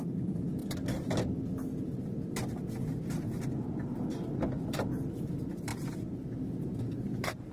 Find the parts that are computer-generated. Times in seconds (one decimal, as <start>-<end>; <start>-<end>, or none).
0.0-0.6; 5.1-7.5